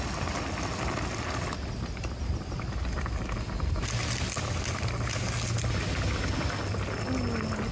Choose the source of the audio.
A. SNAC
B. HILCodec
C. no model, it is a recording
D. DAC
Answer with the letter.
C